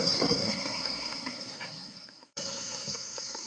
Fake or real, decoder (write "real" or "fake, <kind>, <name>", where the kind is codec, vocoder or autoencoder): fake, codec, SNAC